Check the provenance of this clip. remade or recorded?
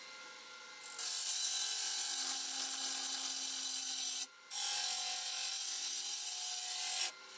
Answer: recorded